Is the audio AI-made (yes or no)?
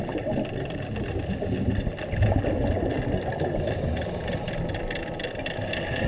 no